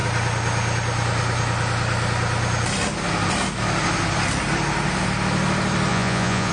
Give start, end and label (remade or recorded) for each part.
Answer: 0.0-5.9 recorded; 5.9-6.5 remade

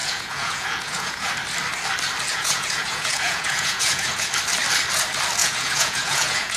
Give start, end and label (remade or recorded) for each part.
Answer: 0.0-1.3 remade; 1.3-2.3 recorded; 2.3-4.3 remade; 4.3-5.4 recorded; 5.4-6.6 remade

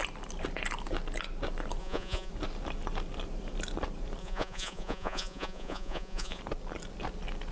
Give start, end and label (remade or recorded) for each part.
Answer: 0.0-1.8 recorded; 1.8-2.3 remade; 2.3-4.2 recorded; 4.2-6.4 remade; 6.4-7.5 recorded

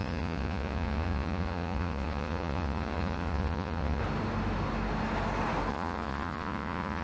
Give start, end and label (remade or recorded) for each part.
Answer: 0.0-4.0 remade; 4.0-5.7 recorded; 5.7-7.0 remade

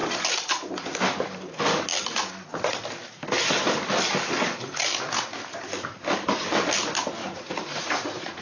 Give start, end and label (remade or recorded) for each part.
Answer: 0.0-7.2 recorded; 7.2-8.4 remade